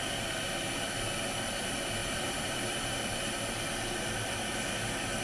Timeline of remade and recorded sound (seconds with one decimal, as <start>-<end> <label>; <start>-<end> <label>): 0.0-2.0 recorded; 2.0-3.2 remade; 3.2-5.2 recorded